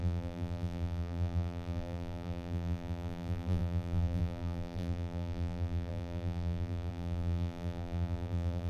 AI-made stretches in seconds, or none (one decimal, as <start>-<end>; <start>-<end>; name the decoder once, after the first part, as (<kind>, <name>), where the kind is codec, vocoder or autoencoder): 0.0-8.7 (vocoder, BigVGAN v2)